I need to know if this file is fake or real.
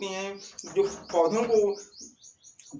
real